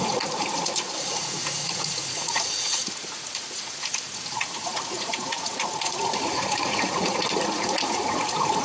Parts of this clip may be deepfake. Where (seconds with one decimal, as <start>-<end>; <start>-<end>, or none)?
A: 0.0-8.6